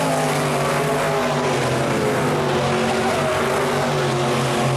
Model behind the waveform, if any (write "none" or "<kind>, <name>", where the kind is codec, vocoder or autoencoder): none